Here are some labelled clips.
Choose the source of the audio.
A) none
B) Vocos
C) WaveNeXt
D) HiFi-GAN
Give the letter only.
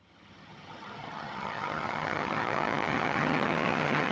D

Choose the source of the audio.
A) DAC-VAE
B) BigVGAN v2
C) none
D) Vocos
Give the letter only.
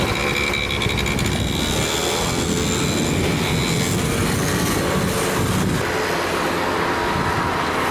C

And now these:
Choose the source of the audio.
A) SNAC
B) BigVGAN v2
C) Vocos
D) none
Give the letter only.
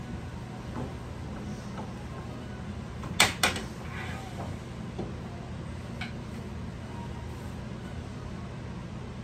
D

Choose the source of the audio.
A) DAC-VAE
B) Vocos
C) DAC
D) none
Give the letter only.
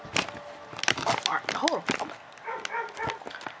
D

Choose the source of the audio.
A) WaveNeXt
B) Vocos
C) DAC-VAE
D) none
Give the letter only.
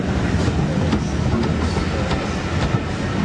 D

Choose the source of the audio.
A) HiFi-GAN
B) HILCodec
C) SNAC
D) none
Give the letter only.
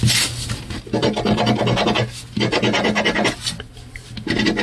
D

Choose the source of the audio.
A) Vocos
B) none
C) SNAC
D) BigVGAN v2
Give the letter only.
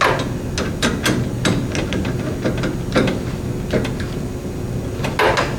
B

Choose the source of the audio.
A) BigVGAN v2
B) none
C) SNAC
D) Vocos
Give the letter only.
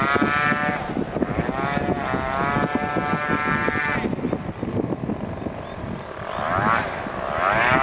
B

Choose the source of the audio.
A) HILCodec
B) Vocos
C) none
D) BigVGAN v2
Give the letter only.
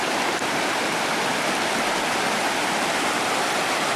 C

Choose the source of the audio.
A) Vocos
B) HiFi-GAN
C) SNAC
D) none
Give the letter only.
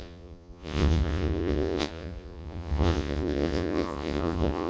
A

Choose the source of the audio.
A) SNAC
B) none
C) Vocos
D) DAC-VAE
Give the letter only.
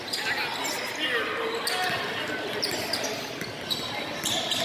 B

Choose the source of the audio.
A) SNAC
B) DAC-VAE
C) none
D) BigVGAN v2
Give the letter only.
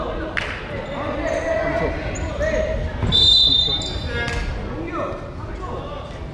C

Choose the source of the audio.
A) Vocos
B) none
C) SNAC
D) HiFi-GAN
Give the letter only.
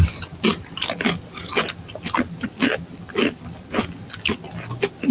B